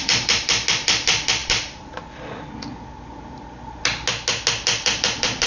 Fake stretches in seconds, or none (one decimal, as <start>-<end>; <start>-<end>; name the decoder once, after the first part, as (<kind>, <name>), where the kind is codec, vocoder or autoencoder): none